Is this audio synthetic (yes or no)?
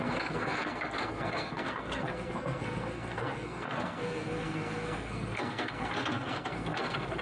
yes